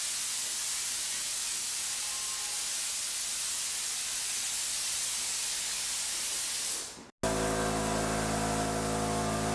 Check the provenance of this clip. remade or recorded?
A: recorded